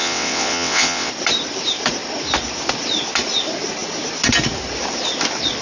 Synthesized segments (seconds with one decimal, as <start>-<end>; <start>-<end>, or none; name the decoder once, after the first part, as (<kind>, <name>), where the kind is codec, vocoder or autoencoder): 0.0-1.1 (vocoder, WaveNeXt)